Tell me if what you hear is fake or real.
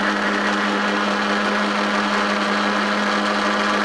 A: real